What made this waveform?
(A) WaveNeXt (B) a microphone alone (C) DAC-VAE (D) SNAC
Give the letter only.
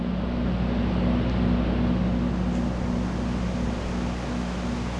B